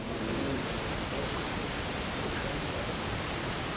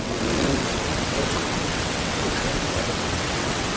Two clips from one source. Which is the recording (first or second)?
first